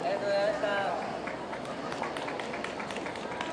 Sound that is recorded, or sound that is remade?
recorded